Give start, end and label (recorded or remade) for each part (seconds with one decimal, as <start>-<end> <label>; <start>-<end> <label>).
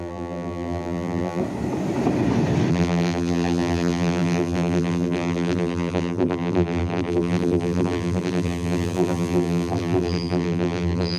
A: 0.0-1.4 remade; 1.4-2.7 recorded; 2.7-11.2 remade